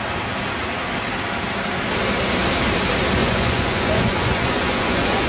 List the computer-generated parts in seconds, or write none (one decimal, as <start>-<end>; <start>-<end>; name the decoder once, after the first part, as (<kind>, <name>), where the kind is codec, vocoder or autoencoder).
3.2-5.3 (vocoder, Vocos)

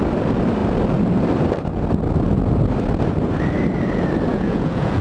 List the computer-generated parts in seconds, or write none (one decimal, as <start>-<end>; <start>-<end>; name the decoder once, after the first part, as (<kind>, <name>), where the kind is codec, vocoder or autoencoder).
4.3-5.0 (vocoder, Vocos)

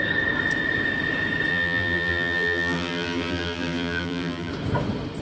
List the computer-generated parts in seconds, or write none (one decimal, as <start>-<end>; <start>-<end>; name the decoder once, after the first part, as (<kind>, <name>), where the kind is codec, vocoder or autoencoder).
1.5-4.5 (vocoder, BigVGAN v2)

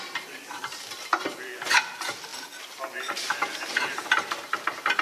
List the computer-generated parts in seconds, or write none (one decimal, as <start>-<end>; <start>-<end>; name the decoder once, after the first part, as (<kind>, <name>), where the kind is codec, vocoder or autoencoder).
2.3-4.1 (vocoder, BigVGAN v2)

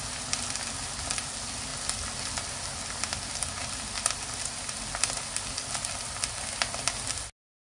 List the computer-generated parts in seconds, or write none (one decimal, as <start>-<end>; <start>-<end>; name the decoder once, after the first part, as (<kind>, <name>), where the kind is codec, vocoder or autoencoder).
none

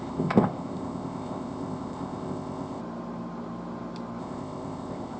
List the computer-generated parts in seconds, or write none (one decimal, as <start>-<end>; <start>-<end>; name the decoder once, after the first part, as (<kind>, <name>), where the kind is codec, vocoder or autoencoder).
0.0-2.8 (codec, ZipCodec); 4.2-5.2

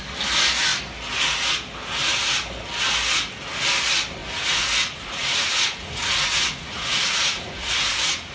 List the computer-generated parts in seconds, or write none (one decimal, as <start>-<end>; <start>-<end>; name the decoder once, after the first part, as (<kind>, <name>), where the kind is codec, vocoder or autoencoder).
4.2-8.3 (vocoder, Vocos)

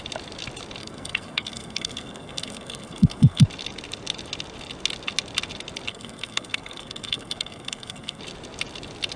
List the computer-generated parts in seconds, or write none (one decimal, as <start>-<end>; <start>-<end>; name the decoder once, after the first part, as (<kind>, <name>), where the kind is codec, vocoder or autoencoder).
0.8-3.4 (codec, SNAC); 5.9-8.2